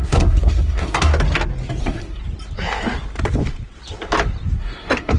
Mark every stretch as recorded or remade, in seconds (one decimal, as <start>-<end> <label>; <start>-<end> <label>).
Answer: 0.0-1.1 remade; 1.1-1.8 recorded; 1.8-2.2 remade; 2.2-4.6 recorded; 4.6-5.2 remade